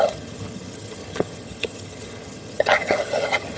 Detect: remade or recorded remade